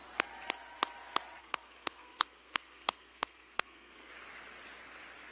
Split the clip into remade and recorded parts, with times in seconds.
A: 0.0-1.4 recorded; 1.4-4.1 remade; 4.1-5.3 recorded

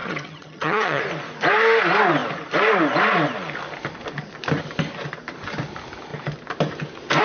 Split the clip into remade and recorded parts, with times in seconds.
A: 0.0-1.0 remade; 1.0-7.2 recorded

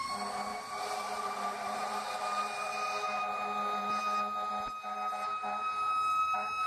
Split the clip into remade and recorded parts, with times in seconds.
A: 0.0-0.5 recorded; 0.5-4.0 remade; 4.0-6.7 recorded

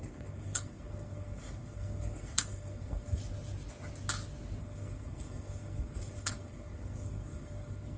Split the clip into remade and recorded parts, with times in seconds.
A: 0.0-3.2 remade; 3.2-4.6 recorded; 4.6-8.0 remade

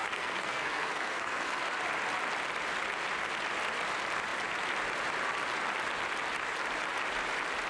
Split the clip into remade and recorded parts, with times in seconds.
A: 0.0-1.6 remade; 1.6-7.7 recorded

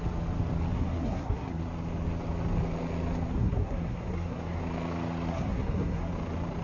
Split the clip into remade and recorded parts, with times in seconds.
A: 0.0-0.7 recorded; 0.7-1.6 remade; 1.6-3.3 recorded; 3.3-4.6 remade; 4.6-5.3 recorded; 5.3-6.1 remade; 6.1-6.6 recorded